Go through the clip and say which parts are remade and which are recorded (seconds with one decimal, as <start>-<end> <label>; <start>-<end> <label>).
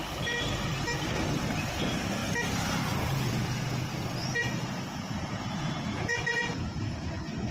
0.0-4.4 recorded; 4.4-7.5 remade